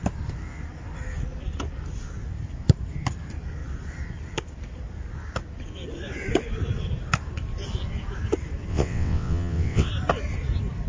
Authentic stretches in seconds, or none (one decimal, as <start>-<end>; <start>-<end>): 0.0-8.7; 9.9-10.9